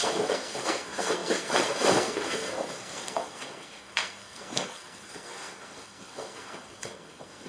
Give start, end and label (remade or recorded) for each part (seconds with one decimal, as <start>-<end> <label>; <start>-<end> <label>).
0.0-7.5 remade